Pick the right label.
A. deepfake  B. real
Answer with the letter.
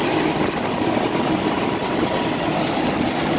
B